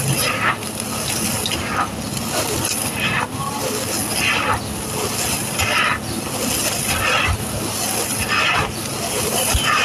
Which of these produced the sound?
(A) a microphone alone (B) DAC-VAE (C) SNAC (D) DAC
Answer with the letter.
A